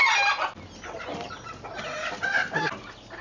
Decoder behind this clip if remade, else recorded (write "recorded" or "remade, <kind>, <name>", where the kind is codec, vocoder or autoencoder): recorded